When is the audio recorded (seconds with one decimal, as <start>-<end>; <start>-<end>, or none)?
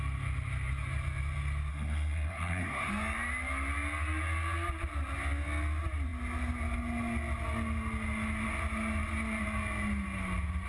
0.0-1.7; 2.9-10.7